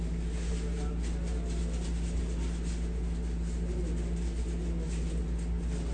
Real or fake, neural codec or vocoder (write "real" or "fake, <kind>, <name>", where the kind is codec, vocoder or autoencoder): real